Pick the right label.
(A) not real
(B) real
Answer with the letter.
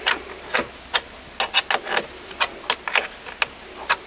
B